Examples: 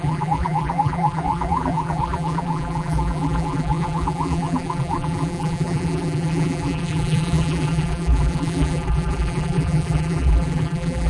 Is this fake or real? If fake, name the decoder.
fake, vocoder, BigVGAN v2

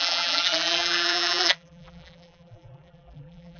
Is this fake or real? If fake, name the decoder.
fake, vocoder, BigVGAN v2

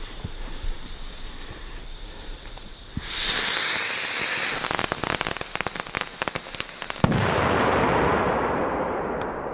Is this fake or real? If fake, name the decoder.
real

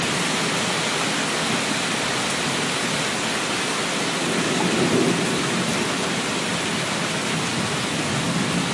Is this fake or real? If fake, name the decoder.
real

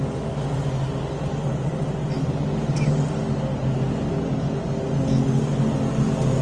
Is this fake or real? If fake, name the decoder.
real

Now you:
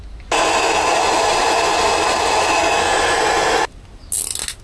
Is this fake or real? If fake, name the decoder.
real